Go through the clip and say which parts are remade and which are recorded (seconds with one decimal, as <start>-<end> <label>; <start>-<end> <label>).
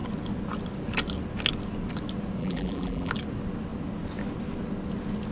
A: 0.0-2.4 recorded; 2.4-3.1 remade; 3.1-5.3 recorded